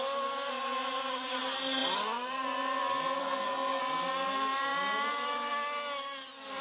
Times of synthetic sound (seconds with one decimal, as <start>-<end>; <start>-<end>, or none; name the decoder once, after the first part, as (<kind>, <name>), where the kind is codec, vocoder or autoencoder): 3.2-3.8 (codec, SNAC)